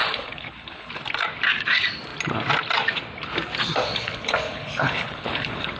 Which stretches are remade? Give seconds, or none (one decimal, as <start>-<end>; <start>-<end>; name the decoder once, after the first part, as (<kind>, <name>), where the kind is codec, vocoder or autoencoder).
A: 0.0-0.9 (codec, HILCodec); 3.8-5.8